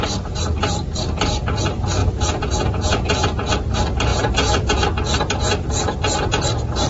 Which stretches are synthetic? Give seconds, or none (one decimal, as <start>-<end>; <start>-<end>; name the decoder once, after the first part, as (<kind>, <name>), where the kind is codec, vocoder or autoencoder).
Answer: 2.0-3.5 (vocoder, Vocos); 4.1-4.8